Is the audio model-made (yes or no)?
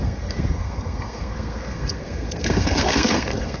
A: yes